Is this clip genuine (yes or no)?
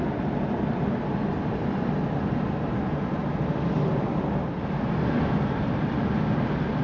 yes